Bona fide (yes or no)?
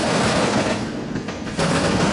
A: no